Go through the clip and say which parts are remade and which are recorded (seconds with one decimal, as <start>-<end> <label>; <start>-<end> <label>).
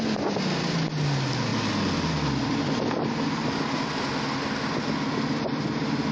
0.0-6.1 recorded